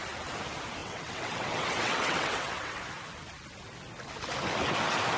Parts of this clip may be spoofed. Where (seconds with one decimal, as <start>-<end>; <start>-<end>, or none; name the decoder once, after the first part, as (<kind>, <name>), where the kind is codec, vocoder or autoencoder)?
0.8-2.8 (vocoder, WaveNeXt)